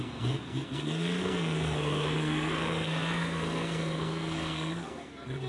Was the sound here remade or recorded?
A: remade